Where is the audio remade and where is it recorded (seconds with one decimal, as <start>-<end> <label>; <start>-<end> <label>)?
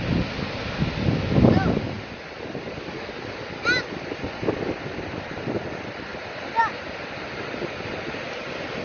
0.0-8.8 recorded